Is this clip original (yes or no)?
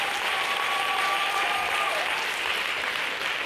yes